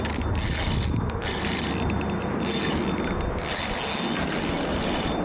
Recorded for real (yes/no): yes